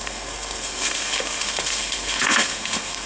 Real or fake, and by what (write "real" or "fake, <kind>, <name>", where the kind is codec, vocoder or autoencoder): fake, codec, SNAC